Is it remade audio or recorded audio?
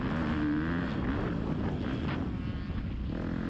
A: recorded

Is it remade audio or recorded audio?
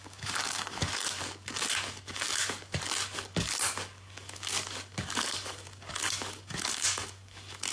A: remade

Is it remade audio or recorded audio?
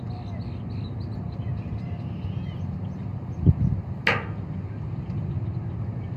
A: recorded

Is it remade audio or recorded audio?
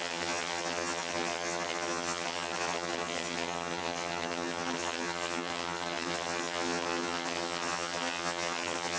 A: remade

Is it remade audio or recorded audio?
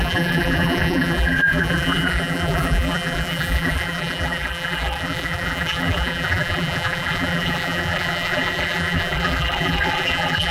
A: remade